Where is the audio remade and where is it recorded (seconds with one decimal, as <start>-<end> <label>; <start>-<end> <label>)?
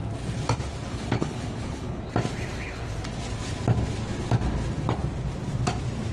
0.0-0.9 recorded; 0.9-2.0 remade; 2.0-6.1 recorded